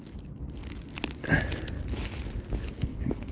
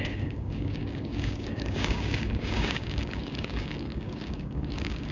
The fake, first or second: second